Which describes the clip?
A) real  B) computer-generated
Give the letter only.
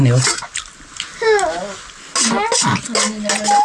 A